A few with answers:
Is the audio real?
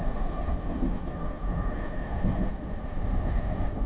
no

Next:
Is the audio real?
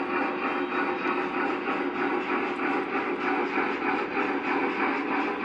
yes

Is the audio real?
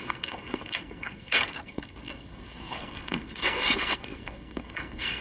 no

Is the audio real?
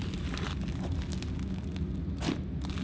yes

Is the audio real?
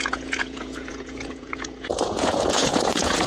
no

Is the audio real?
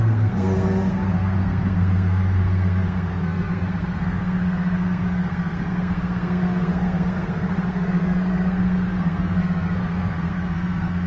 no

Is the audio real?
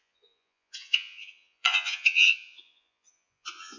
no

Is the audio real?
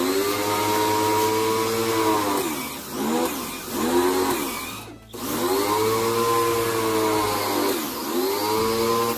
yes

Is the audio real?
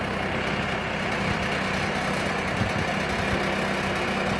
yes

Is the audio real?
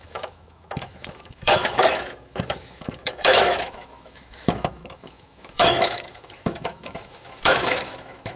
no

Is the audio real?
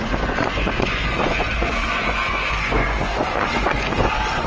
no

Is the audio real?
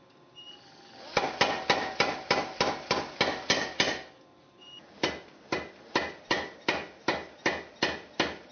yes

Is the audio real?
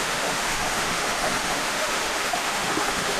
no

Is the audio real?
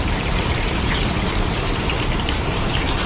no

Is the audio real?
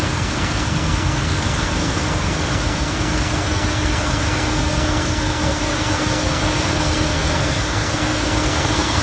no